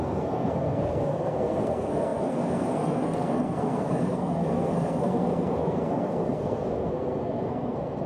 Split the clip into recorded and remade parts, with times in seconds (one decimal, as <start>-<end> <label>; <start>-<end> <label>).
0.0-8.1 remade